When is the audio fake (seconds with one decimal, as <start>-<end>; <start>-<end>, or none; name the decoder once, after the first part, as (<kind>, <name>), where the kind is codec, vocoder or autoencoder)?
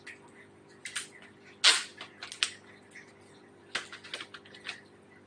none